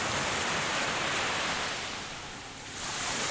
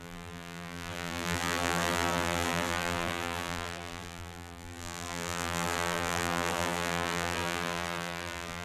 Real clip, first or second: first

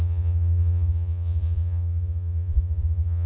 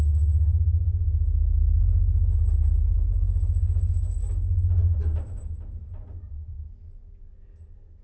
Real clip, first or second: second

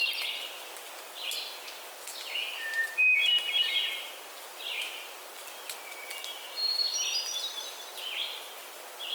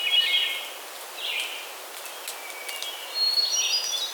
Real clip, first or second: second